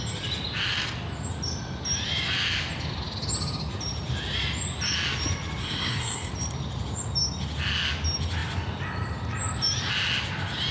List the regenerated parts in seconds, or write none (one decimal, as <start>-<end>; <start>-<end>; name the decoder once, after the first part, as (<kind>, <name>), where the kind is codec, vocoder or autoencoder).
5.6-6.3 (codec, SNAC)